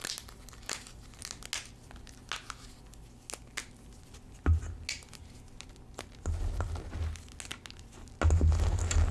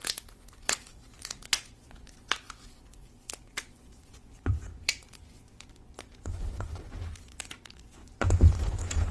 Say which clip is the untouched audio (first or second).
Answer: first